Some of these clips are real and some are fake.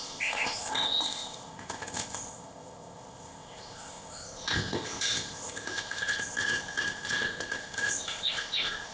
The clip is fake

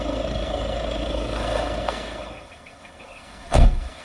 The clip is fake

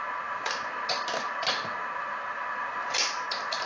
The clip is real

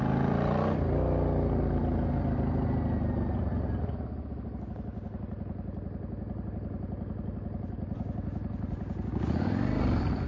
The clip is real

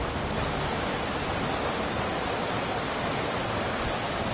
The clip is real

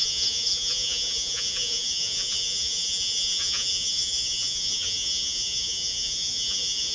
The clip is fake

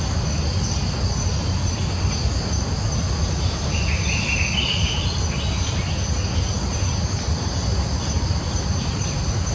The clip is real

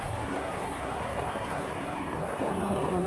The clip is fake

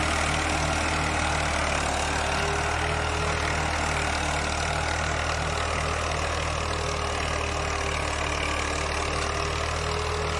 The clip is real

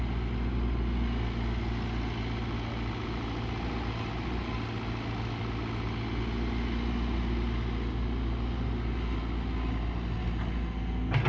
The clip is real